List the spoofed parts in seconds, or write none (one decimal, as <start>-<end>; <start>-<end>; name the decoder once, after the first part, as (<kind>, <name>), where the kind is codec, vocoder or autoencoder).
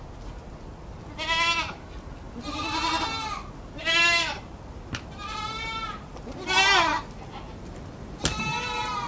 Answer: none